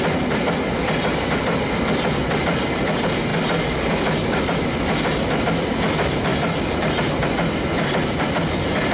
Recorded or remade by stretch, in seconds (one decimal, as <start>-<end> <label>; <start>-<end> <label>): 0.0-8.9 recorded